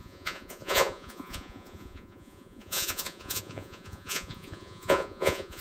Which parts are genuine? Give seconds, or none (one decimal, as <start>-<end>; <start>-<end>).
none